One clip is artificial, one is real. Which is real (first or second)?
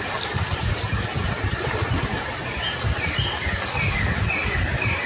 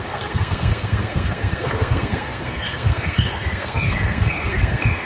first